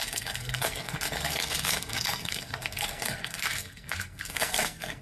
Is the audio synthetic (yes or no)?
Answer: yes